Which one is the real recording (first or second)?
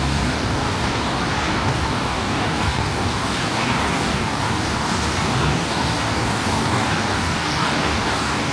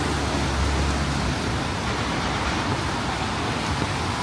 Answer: second